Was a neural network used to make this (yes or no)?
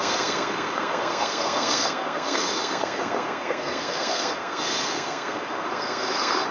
yes